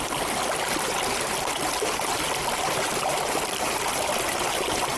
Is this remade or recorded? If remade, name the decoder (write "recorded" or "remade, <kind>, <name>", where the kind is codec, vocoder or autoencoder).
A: recorded